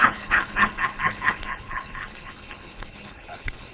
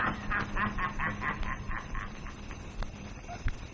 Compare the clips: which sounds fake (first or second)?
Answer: first